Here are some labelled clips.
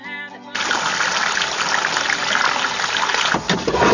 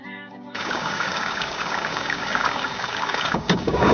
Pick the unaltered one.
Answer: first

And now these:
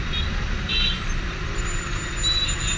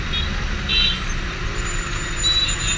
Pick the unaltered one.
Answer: second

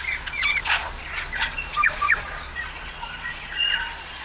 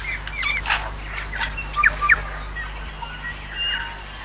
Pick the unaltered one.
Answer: second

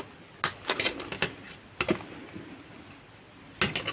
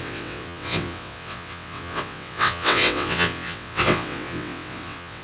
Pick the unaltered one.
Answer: first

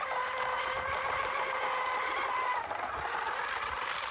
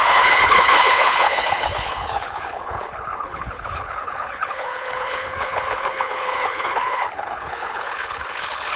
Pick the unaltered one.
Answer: first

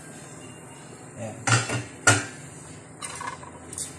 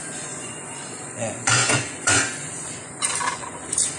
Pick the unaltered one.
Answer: first